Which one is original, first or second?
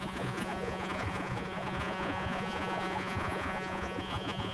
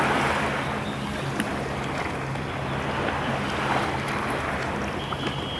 second